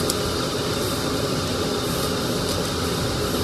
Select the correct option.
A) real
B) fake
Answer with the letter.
A